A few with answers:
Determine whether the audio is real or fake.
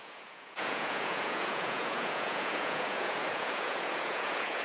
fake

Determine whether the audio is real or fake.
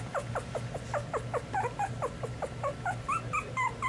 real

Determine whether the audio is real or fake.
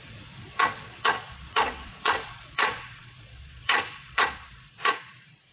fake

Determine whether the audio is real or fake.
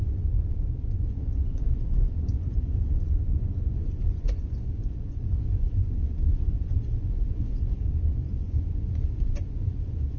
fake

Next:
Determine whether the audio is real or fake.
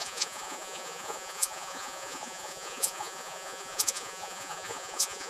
fake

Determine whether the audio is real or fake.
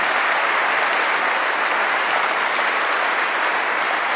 real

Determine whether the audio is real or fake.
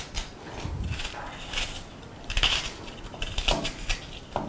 real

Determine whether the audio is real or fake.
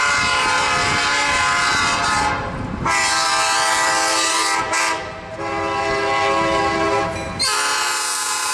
real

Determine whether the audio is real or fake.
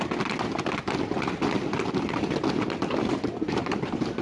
real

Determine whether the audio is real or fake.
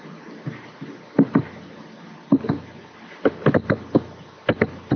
real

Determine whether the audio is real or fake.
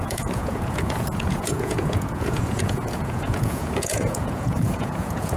fake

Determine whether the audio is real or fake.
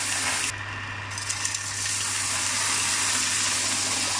real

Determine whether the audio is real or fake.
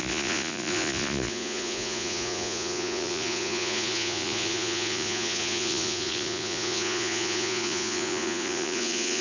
fake